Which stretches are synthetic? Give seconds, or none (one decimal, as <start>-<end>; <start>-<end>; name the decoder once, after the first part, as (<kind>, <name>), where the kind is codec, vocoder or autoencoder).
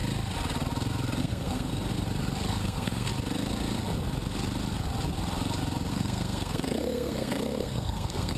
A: 1.2-1.7 (codec, SNAC); 2.5-3.1; 5.9-8.4